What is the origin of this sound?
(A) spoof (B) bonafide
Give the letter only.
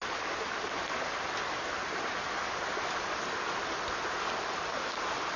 B